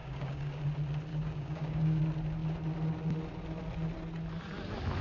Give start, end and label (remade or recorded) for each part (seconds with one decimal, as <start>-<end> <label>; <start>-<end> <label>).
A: 0.0-0.6 remade; 0.6-1.1 recorded; 1.1-2.0 remade; 2.0-5.0 recorded